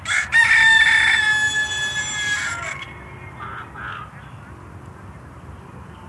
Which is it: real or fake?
real